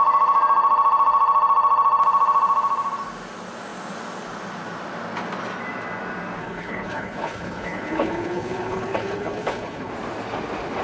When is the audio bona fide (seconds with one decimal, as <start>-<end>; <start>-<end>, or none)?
0.0-6.4; 9.9-10.8